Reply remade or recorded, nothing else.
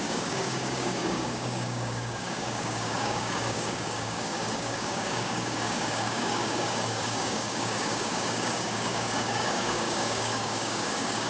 remade